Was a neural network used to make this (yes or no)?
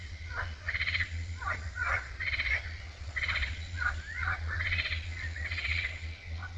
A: yes